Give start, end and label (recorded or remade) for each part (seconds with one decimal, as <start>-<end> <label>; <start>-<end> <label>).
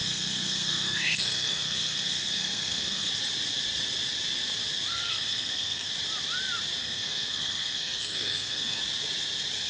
0.0-3.1 remade; 3.1-4.9 recorded; 4.9-5.9 remade; 5.9-6.8 recorded; 6.8-8.8 remade; 8.8-9.7 recorded